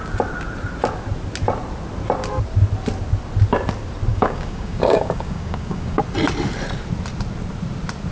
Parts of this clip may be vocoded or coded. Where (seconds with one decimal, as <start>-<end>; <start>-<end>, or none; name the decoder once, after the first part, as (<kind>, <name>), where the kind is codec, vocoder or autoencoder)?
4.1-6.0 (codec, DAC)